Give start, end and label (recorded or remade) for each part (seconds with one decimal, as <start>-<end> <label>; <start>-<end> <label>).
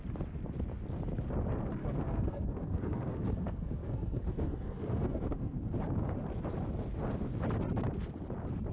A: 0.0-1.8 recorded; 1.8-5.7 remade; 5.7-8.7 recorded